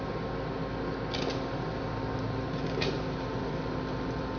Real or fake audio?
real